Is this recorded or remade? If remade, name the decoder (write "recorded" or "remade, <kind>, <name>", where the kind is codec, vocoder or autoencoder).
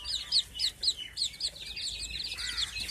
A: recorded